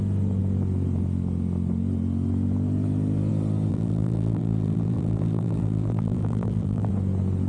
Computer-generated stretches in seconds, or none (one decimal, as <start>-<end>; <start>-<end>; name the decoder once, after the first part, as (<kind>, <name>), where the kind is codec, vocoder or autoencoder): 3.7-6.9 (vocoder, BigVGAN v2)